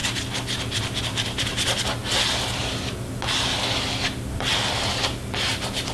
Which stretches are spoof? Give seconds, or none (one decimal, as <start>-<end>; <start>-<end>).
none